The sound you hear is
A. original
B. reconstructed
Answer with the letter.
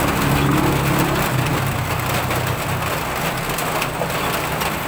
A